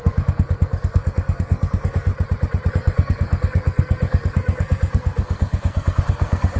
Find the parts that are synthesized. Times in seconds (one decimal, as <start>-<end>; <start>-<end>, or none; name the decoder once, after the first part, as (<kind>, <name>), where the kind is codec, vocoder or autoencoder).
0.0-2.1 (codec, SNAC); 2.7-6.6